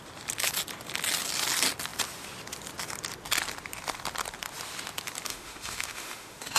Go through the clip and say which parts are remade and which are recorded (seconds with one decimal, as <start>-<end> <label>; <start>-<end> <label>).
0.0-5.3 recorded; 5.3-6.6 remade